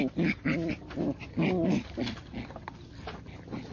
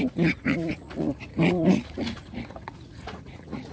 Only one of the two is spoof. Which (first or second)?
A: second